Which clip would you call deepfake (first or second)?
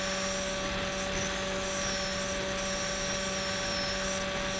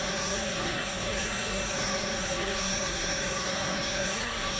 second